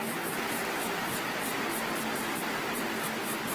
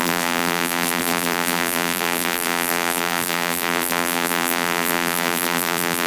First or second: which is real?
first